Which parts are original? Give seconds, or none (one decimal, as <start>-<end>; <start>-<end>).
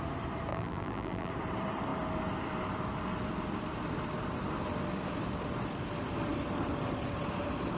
0.0-0.5; 1.3-7.8